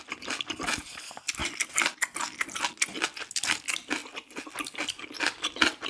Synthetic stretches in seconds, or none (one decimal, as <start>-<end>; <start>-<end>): 1.4-2.5

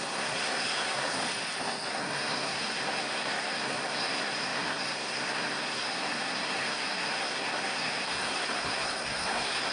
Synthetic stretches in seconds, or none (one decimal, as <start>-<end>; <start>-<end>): 0.0-1.1; 1.9-9.7

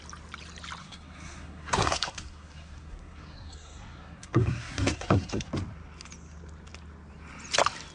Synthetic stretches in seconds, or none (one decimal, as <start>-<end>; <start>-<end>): 0.8-5.5

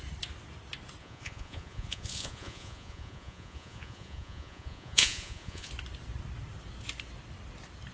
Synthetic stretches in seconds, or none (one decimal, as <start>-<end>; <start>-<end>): 1.0-5.7

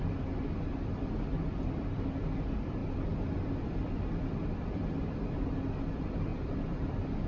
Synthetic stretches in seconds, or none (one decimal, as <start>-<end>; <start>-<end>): 0.0-7.3

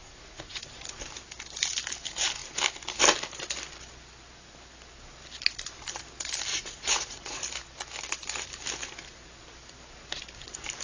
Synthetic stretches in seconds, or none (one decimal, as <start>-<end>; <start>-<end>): 0.0-1.0; 6.5-7.4

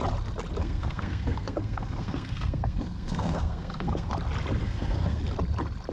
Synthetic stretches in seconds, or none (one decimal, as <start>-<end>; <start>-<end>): 0.6-4.1; 4.6-5.2

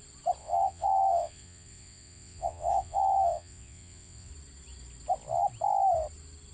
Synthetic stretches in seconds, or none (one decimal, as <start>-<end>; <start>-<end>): 0.4-4.3